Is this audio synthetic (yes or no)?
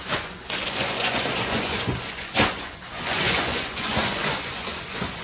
yes